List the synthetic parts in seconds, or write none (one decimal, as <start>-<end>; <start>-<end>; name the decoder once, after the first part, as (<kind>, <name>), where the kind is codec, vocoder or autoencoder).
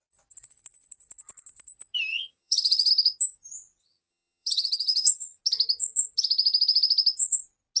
2.1-2.9 (vocoder, HiFi-GAN); 3.8-5.4